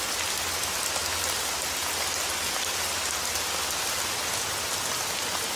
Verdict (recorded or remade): recorded